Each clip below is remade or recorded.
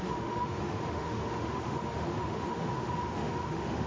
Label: remade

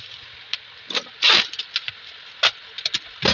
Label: recorded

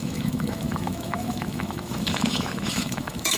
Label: remade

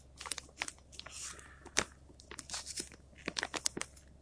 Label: recorded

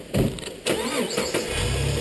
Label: recorded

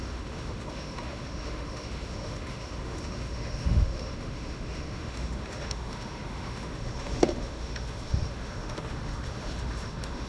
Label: remade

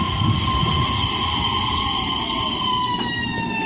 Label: recorded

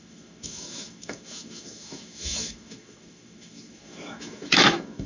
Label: remade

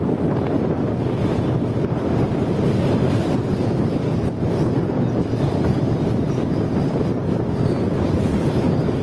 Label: recorded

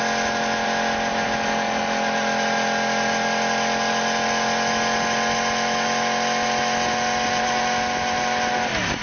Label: recorded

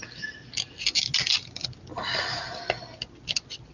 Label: recorded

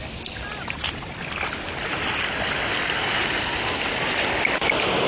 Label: recorded